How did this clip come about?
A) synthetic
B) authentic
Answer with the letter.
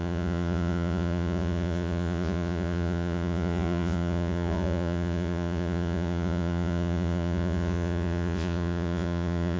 A